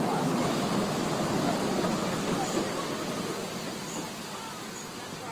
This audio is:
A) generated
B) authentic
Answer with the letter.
B